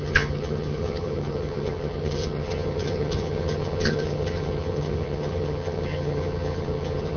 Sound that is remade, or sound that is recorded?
remade